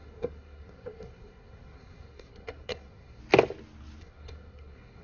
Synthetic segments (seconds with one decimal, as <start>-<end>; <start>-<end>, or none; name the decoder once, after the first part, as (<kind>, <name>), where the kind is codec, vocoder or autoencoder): 0.0-3.2 (codec, SNAC); 4.0-5.0